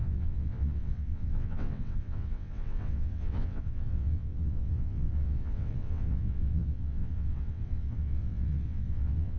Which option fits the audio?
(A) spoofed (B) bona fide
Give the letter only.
A